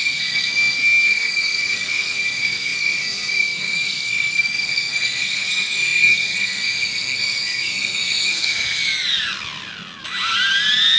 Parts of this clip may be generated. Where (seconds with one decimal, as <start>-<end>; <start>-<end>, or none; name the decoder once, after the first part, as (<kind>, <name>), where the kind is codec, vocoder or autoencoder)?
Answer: 0.0-8.8 (codec, SNAC)